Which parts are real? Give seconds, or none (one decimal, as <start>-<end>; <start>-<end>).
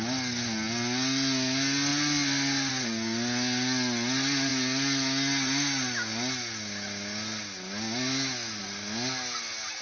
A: 0.0-9.8